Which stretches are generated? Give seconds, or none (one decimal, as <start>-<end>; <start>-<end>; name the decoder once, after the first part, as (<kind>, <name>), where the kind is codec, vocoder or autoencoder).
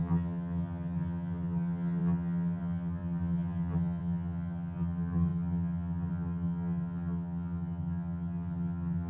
0.0-9.1 (vocoder, HiFi-GAN)